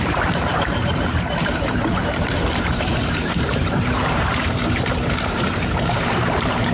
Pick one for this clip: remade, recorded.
remade